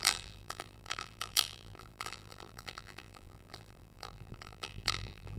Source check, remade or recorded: remade